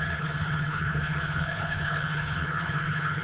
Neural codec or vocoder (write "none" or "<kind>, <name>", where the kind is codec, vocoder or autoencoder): codec, HILCodec